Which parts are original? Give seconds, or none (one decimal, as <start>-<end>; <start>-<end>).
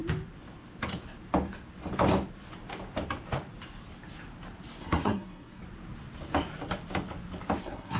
0.0-4.8; 5.6-7.6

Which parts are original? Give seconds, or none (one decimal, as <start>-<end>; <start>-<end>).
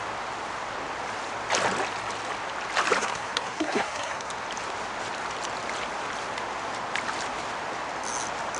0.0-3.0; 4.3-8.6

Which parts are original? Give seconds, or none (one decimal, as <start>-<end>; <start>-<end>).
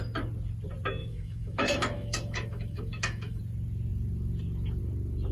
0.0-1.0; 3.4-5.3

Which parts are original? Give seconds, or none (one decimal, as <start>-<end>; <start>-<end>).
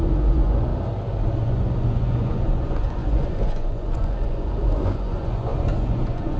0.7-1.4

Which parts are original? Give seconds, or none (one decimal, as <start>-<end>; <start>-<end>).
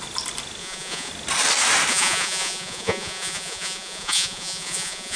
0.0-0.6; 1.1-1.9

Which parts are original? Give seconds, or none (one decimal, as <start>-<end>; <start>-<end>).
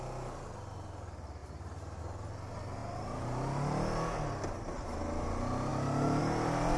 0.0-6.8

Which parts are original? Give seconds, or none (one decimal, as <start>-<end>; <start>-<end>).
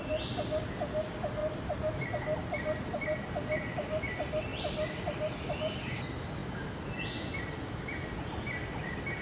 0.0-9.2